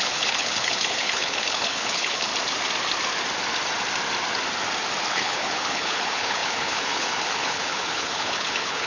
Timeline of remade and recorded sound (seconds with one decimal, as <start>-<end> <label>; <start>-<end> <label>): 0.0-2.3 remade; 2.3-5.1 recorded; 5.1-8.9 remade